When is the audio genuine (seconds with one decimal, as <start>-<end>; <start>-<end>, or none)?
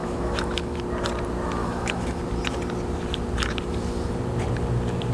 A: 0.8-1.6; 2.2-5.1